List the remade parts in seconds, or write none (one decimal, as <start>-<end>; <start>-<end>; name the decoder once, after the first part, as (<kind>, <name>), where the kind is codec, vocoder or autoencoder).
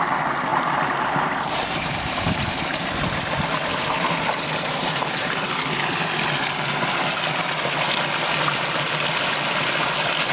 0.5-2.8 (vocoder, BigVGAN v2); 3.7-5.5